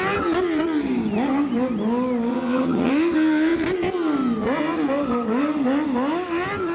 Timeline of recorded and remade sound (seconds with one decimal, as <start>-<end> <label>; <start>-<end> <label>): 0.0-2.3 recorded; 2.3-2.9 remade; 2.9-6.7 recorded